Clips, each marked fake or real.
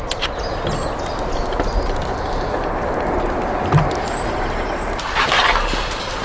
real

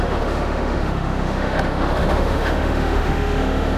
fake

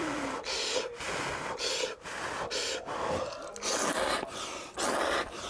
real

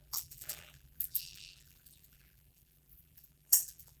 fake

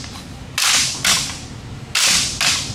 real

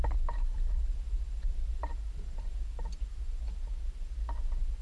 real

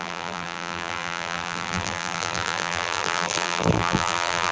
fake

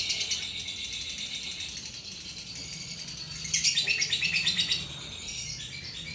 real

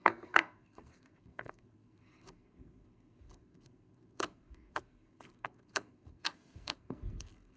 fake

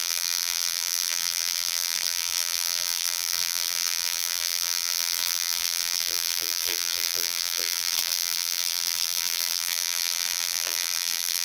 fake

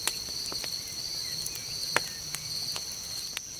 real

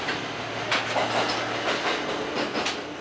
real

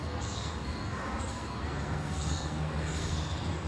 fake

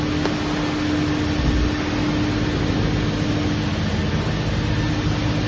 real